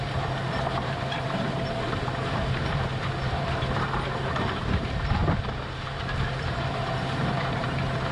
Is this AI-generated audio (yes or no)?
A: yes